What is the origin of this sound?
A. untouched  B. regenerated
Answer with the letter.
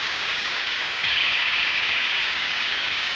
B